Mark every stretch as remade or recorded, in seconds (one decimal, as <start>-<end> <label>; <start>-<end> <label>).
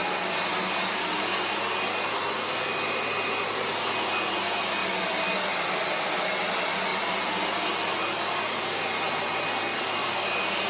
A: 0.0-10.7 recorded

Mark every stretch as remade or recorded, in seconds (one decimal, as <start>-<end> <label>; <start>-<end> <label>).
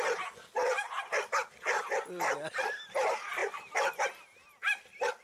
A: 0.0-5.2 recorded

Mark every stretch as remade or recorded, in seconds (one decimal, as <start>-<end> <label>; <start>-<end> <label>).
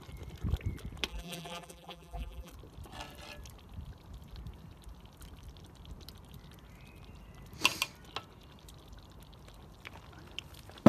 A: 0.0-1.1 recorded; 1.1-2.5 remade; 2.5-10.9 recorded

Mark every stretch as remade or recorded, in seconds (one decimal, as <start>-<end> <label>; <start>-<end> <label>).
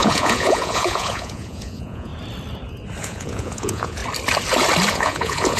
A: 0.0-2.1 remade; 2.1-3.0 recorded; 3.0-4.0 remade; 4.0-4.9 recorded; 4.9-5.6 remade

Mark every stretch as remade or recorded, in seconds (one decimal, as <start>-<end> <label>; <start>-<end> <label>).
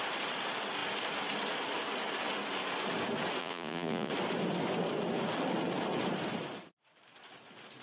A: 0.0-3.4 recorded; 3.4-4.1 remade; 4.1-7.8 recorded